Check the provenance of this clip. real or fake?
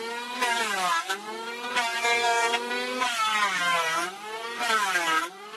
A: fake